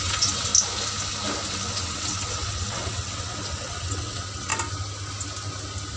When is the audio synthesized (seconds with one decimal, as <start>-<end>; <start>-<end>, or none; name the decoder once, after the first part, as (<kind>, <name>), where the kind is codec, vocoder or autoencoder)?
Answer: 0.0-0.5 (vocoder, WaveNeXt); 1.5-4.5